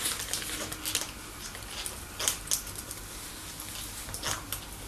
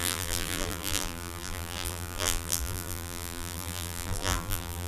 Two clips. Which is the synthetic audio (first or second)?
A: second